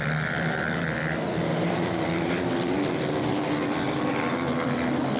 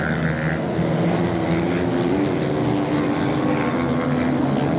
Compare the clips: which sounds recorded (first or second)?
second